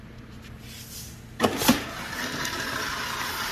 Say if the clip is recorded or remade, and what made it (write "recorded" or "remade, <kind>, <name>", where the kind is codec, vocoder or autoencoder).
recorded